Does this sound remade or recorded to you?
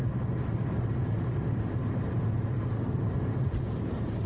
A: recorded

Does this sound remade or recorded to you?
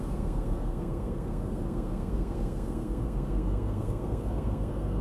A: remade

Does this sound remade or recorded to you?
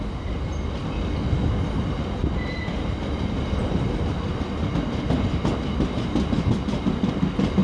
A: recorded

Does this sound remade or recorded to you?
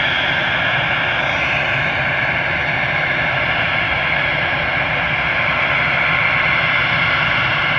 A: recorded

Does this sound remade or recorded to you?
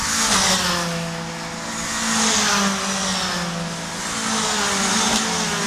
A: recorded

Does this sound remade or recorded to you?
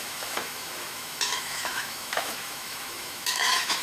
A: remade